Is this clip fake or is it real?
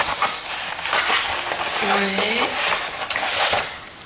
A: real